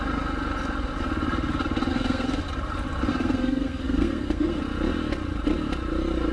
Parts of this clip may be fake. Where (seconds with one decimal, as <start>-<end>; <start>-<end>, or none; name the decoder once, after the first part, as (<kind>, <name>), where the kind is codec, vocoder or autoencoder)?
1.9-2.4 (codec, SNAC); 3.1-4.6